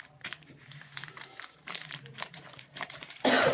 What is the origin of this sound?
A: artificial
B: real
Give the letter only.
A